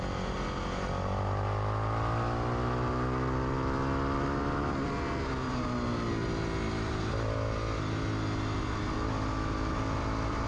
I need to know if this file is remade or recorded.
recorded